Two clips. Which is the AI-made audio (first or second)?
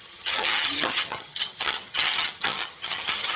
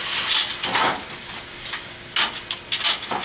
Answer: first